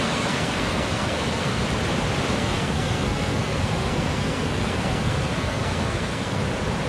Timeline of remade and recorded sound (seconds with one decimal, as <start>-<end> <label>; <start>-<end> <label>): 0.0-1.6 remade; 1.6-2.3 recorded; 2.3-6.4 remade; 6.4-6.9 recorded